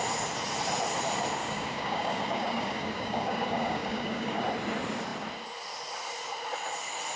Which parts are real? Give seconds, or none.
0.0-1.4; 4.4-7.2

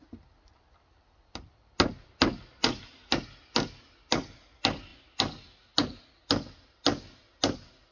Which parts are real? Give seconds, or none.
0.0-7.9

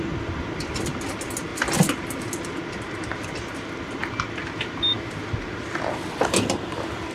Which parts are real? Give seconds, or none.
0.0-7.1

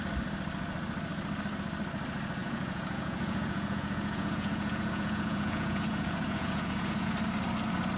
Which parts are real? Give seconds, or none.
0.0-2.4; 7.1-8.0

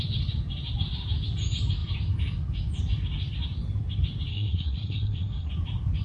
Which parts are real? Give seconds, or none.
0.0-4.3; 5.5-6.0

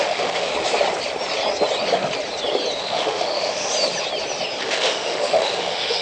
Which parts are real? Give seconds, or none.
0.5-2.8; 3.7-4.6